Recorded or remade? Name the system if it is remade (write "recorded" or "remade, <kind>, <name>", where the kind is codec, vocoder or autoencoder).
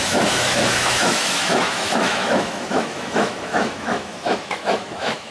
remade, autoencoder, DAC-VAE